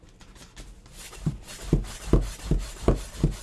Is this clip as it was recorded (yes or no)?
yes